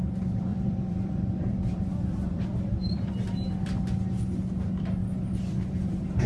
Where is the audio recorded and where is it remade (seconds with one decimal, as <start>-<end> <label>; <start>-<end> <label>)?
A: 0.0-0.5 recorded; 0.5-3.1 remade; 3.1-6.3 recorded